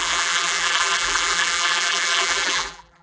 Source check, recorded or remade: remade